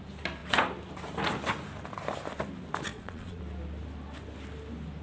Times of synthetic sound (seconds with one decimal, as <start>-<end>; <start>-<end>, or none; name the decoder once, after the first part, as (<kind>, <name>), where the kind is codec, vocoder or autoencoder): 2.9-3.4 (vocoder, Vocos)